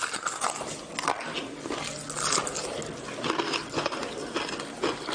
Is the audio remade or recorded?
recorded